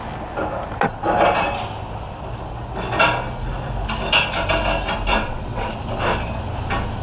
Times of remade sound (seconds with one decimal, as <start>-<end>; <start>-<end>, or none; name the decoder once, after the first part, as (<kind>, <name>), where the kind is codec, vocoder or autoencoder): 5.1-5.7 (vocoder, WaveNeXt)